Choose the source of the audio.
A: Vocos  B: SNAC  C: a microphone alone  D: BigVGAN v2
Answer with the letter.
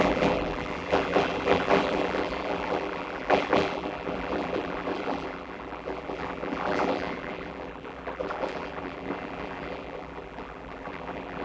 D